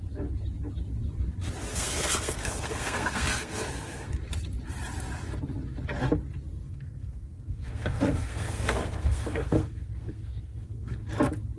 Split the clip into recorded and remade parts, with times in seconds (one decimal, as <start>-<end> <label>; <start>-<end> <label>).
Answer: 0.0-1.7 recorded; 1.7-4.1 remade; 4.1-6.5 recorded; 6.5-11.0 remade; 11.0-11.6 recorded